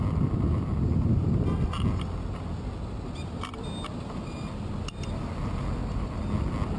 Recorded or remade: recorded